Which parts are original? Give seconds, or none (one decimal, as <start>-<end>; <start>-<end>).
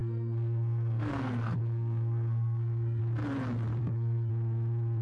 3.0-3.8; 4.3-5.0